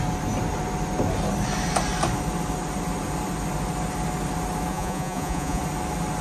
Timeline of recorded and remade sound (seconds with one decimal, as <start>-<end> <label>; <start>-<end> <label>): 0.0-4.7 recorded; 4.7-5.6 remade; 5.6-6.2 recorded